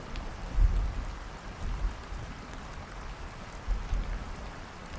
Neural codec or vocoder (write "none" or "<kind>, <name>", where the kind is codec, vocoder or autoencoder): vocoder, BigVGAN v2